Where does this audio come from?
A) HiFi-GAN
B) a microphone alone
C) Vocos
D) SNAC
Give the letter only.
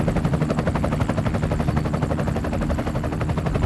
B